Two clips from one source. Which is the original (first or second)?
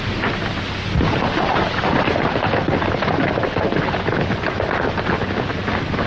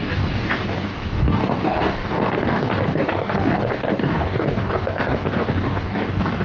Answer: first